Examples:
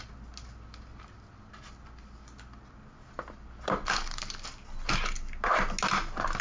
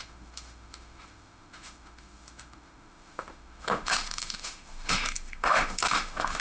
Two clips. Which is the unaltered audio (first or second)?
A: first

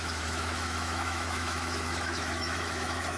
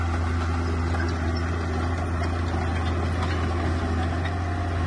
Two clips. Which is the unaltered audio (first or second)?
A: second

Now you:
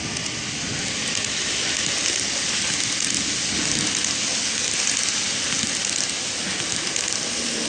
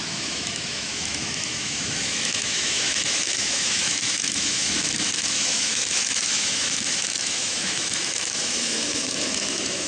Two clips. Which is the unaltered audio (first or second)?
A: first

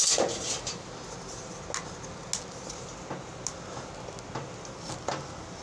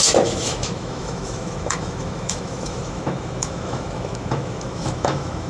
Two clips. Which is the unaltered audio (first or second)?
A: first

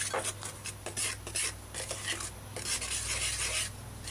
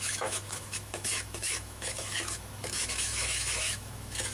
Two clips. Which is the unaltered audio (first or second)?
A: first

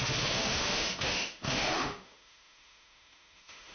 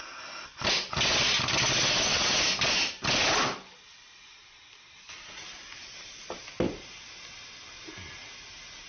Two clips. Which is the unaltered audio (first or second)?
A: second